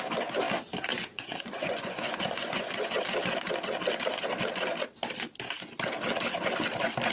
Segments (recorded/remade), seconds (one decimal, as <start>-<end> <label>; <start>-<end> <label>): 0.0-0.9 recorded; 0.9-2.9 remade; 2.9-7.1 recorded